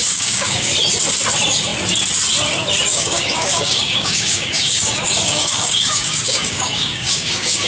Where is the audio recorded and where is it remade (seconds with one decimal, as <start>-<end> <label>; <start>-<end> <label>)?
0.0-0.7 remade; 0.7-2.9 recorded; 2.9-7.7 remade